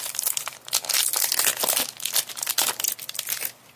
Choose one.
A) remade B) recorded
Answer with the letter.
B